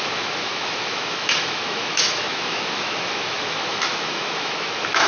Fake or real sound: fake